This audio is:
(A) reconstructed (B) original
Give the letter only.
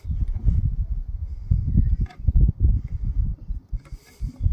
B